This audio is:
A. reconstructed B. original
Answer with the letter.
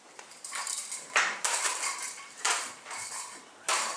A